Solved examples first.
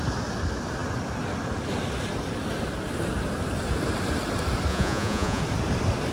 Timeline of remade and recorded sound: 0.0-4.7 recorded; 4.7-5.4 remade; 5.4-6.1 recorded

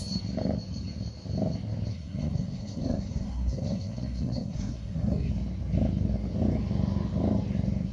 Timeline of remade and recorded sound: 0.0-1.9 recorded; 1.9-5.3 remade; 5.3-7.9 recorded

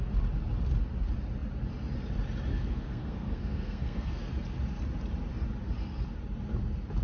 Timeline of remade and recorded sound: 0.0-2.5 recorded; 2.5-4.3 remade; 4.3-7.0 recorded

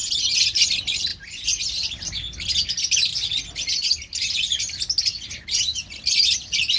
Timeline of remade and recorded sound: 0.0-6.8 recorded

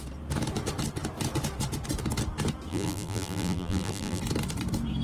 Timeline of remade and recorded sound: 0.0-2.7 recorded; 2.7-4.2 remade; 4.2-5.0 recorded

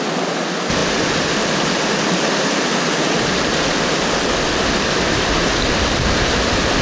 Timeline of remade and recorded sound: 0.0-6.8 recorded